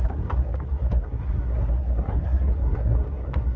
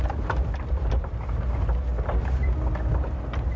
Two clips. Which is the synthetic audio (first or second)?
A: first